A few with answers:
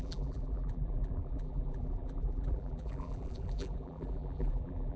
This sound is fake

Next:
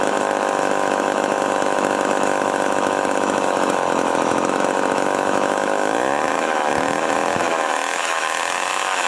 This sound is fake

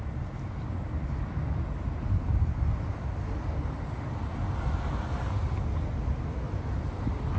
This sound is real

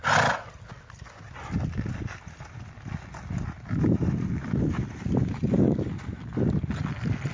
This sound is real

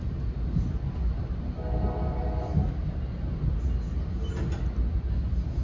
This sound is real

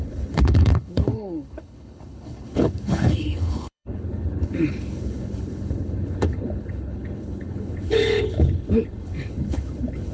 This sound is fake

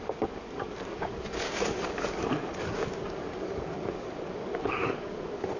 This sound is fake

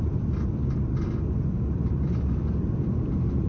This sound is fake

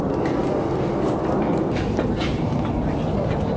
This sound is real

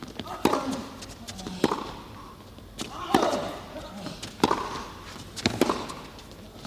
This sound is real